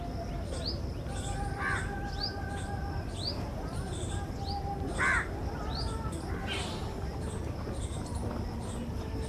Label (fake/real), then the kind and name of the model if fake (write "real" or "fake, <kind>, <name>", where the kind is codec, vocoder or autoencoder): real